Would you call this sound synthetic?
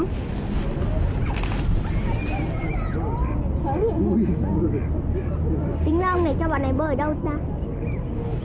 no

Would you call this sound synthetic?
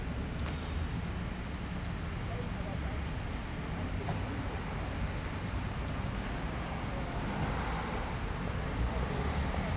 no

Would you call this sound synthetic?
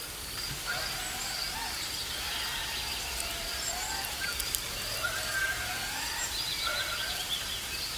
yes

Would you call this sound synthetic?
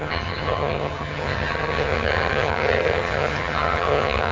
yes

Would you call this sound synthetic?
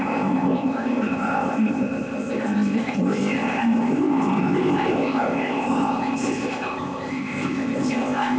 yes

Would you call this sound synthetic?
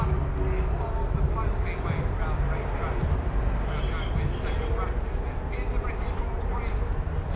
no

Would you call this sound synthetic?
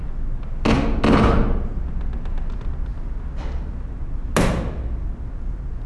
no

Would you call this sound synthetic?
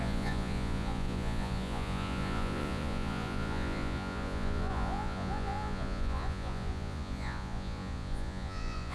yes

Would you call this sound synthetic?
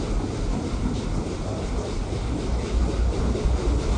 no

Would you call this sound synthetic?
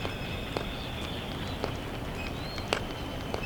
no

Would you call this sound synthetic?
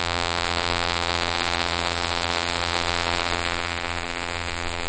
yes